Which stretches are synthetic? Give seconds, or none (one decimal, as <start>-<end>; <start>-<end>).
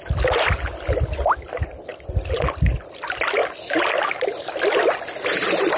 none